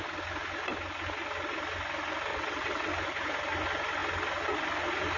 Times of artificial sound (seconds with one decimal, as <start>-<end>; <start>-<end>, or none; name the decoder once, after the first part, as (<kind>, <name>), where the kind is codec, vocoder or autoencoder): 2.3-2.9 (vocoder, WaveNeXt)